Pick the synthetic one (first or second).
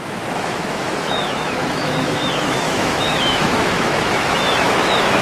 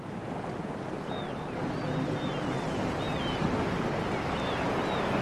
first